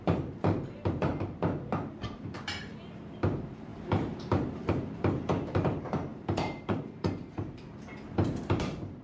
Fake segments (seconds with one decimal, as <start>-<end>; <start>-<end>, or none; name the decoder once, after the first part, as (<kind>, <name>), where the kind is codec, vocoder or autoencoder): 0.0-1.1 (vocoder, BigVGAN v2); 2.0-9.0

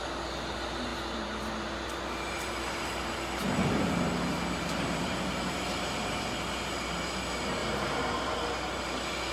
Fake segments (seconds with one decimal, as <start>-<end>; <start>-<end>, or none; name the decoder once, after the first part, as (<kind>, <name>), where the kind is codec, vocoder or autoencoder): 7.6-8.5 (vocoder, BigVGAN v2)